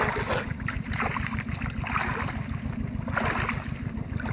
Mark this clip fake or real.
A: real